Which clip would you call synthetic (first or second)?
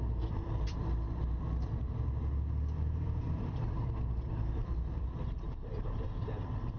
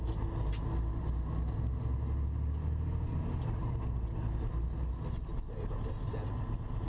first